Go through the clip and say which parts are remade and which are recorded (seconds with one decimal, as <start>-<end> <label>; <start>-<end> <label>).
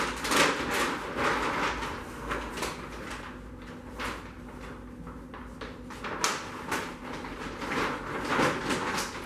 0.0-2.0 recorded; 2.0-2.5 remade; 2.5-9.3 recorded